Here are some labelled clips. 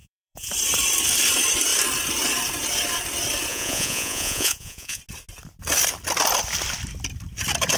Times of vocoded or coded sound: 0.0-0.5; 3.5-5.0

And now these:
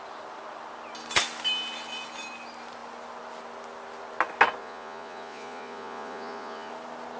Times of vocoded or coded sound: 4.6-6.7